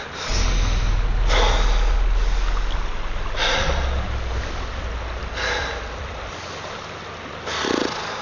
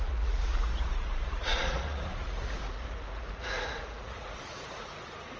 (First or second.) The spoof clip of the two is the second